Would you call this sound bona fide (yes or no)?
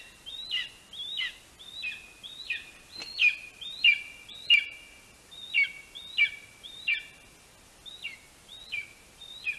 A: yes